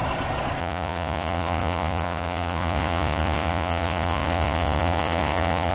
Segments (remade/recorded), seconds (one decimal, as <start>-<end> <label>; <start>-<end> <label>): 0.0-0.6 recorded; 0.6-5.7 remade